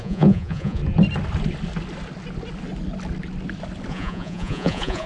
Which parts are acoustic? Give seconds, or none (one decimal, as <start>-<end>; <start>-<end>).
0.8-3.9